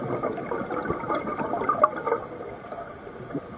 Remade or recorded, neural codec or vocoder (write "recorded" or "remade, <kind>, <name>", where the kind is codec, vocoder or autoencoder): recorded